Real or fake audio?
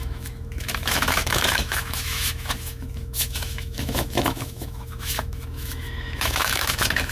fake